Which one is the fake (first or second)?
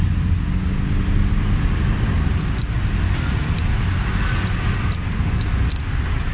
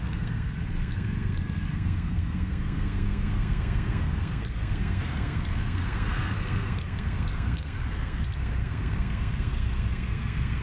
second